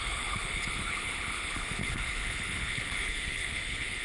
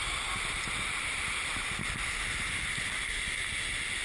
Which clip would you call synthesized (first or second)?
first